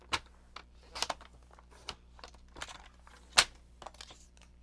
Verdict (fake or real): real